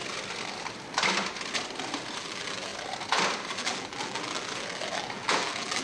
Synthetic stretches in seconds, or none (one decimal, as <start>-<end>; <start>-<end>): 2.2-2.7; 3.5-5.8